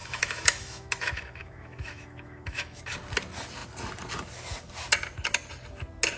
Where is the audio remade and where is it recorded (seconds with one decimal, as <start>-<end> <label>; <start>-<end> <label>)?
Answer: 0.0-2.8 remade; 2.8-6.2 recorded